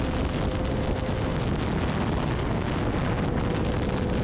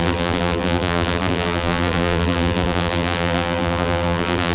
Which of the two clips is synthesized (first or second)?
second